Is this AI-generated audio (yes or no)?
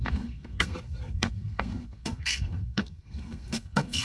yes